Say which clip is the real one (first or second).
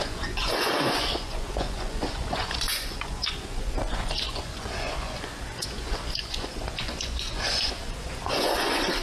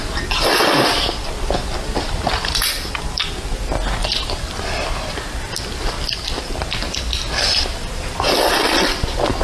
second